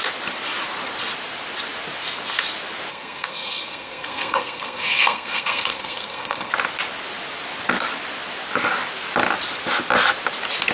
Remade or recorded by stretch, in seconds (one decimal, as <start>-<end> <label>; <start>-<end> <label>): 0.0-2.9 recorded; 2.9-6.5 remade; 6.5-10.7 recorded